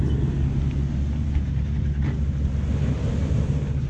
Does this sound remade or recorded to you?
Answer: recorded